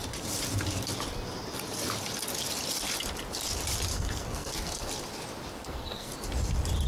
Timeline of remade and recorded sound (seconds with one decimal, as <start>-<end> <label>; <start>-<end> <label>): 0.0-3.9 recorded; 3.9-4.9 remade; 4.9-5.5 recorded; 5.5-6.1 remade; 6.1-6.9 recorded